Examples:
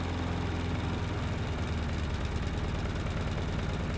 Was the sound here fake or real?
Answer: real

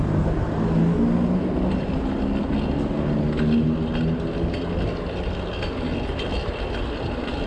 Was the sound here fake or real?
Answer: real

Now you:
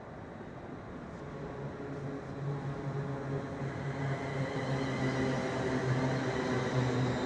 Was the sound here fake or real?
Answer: real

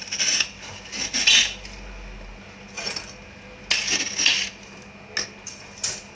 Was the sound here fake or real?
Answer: real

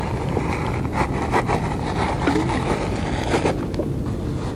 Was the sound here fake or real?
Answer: real